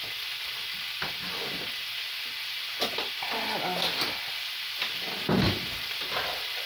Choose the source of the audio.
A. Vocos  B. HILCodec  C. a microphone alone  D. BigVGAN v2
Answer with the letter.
C